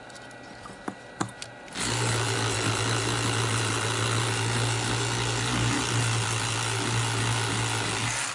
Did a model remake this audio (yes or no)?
no